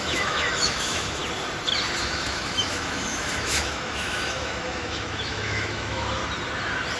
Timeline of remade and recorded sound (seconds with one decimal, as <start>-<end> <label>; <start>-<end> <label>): 0.0-1.2 remade; 1.2-2.0 recorded; 2.0-6.2 remade; 6.2-7.0 recorded